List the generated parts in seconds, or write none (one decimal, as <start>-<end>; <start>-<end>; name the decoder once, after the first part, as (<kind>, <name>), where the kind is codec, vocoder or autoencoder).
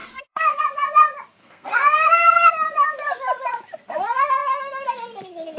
0.0-0.6 (codec, SNAC); 1.4-2.5